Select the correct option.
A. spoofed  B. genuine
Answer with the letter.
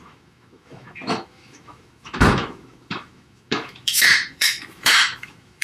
A